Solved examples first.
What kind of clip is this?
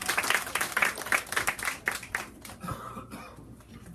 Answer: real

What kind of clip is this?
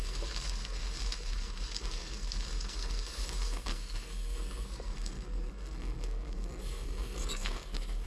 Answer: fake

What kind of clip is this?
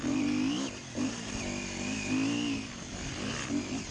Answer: real